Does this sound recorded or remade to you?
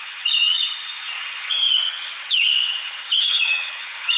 remade